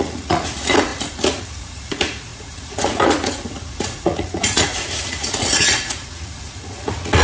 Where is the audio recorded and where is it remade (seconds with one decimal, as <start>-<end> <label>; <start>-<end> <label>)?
0.0-7.2 remade